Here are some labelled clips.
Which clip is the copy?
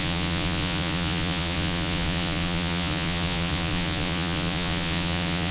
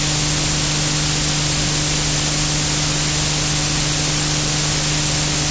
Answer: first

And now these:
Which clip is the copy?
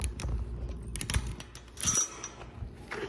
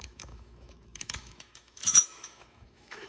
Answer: second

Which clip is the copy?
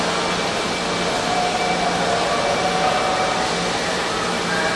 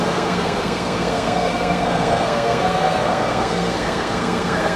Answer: second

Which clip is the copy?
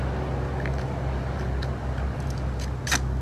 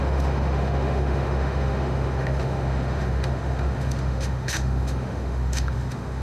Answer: second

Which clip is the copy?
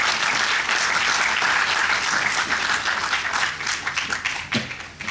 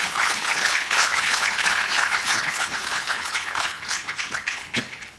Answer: second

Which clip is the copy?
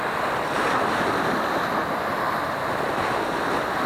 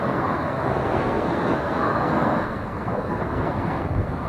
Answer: second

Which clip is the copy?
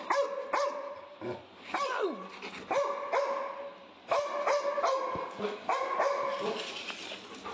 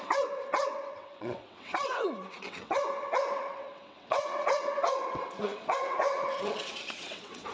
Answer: second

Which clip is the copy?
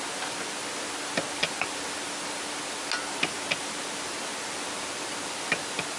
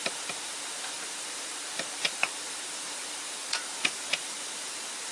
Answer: second